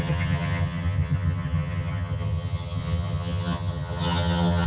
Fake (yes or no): yes